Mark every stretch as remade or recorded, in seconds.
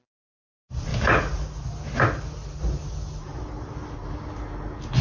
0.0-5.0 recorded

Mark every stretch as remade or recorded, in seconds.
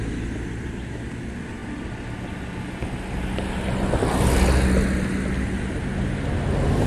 0.0-6.9 recorded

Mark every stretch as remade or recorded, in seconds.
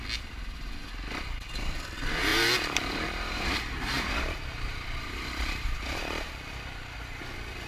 0.0-2.3 recorded; 2.3-6.5 remade; 6.5-7.7 recorded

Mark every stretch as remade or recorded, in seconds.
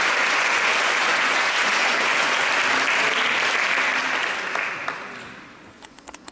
0.0-2.5 remade; 2.5-5.6 recorded; 5.6-6.3 remade